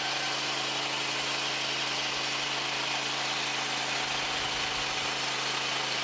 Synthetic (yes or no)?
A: no